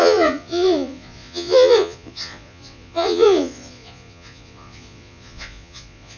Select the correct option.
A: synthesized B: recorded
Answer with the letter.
A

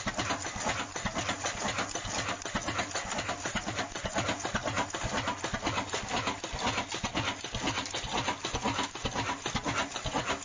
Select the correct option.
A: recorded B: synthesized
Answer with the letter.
A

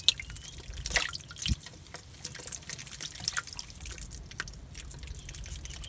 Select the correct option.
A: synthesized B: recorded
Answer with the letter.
B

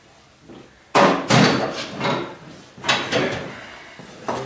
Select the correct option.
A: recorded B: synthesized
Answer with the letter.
A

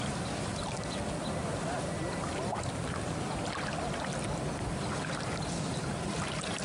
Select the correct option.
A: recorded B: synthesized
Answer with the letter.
A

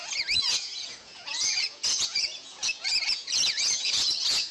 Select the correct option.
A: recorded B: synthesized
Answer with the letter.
B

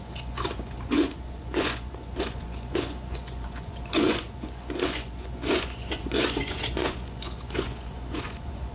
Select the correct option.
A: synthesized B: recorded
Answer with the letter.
A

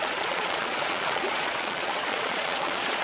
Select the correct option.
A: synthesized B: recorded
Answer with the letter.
A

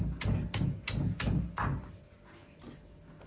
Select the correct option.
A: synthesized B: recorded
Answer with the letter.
B